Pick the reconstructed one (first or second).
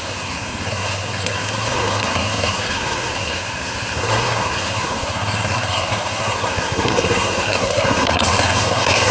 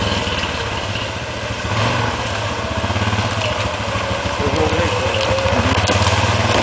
first